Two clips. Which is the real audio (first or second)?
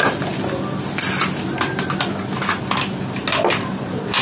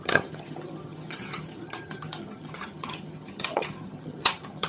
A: first